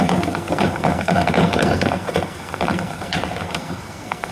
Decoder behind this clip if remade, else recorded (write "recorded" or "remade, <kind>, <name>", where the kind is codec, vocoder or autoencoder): remade, codec, SNAC